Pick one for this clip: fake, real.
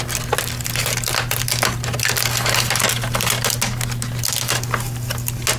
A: real